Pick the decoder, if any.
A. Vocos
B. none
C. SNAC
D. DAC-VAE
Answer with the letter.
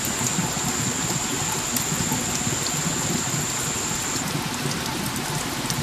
B